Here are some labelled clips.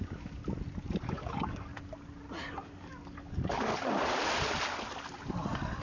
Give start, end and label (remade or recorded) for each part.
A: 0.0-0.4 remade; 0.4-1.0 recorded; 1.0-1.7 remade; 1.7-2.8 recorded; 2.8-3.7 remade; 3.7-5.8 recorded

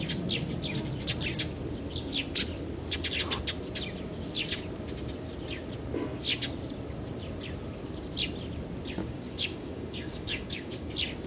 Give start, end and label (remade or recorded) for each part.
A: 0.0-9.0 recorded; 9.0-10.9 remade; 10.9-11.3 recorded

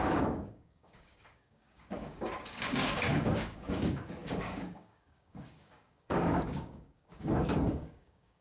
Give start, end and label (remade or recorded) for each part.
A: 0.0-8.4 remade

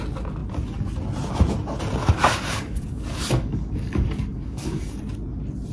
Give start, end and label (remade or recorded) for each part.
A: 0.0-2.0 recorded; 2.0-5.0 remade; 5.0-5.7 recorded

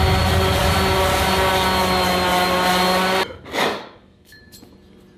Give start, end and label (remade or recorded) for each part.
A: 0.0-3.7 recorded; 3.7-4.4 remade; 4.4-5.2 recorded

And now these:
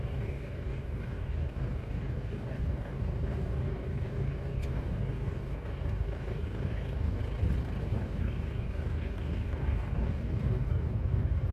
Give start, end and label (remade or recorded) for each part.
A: 0.0-7.2 remade; 7.2-7.8 recorded; 7.8-11.5 remade

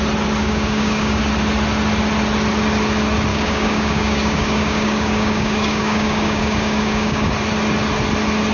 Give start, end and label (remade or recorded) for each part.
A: 0.0-0.4 recorded; 0.4-1.2 remade; 1.2-3.3 recorded; 3.3-7.3 remade; 7.3-8.5 recorded